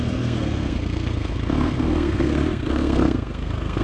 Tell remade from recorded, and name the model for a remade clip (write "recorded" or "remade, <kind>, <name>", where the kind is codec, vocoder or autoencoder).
remade, codec, SNAC